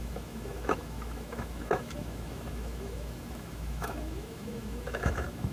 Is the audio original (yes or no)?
no